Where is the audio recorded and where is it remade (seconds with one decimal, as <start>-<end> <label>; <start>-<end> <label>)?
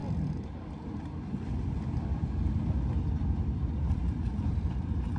0.0-4.3 recorded; 4.3-5.2 remade